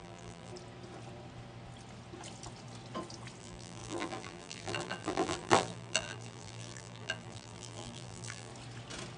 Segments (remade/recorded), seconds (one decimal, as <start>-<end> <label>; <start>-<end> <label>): 0.0-0.5 remade; 0.5-3.4 recorded; 3.4-8.5 remade; 8.5-9.2 recorded